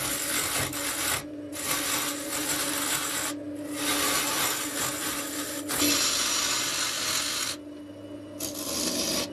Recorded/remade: recorded